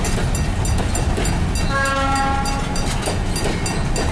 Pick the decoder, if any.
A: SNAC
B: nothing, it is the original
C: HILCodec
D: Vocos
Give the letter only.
B